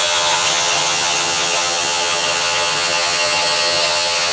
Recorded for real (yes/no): no